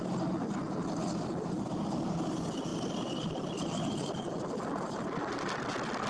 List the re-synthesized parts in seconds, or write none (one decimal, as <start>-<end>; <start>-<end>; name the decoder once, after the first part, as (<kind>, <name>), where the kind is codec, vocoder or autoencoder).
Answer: none